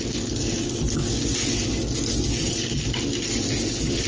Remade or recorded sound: recorded